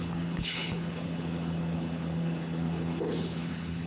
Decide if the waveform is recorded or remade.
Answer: remade